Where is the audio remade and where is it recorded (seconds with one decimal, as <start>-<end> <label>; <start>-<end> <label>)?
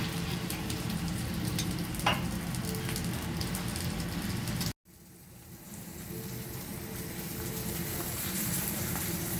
0.0-2.1 remade; 2.1-5.1 recorded; 5.1-6.7 remade; 6.7-7.7 recorded; 7.7-9.4 remade